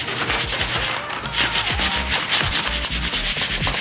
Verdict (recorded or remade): recorded